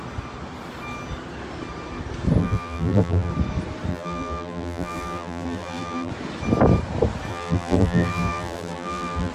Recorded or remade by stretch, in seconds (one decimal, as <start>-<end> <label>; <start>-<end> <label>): 0.0-2.4 recorded; 2.4-3.3 remade; 3.3-3.9 recorded; 3.9-6.1 remade; 6.1-7.3 recorded; 7.3-9.3 remade